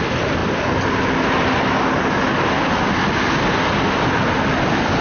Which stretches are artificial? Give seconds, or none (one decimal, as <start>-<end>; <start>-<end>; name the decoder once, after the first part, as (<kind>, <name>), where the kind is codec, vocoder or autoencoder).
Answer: none